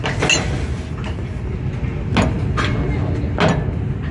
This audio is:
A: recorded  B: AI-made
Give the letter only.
A